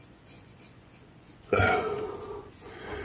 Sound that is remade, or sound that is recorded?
remade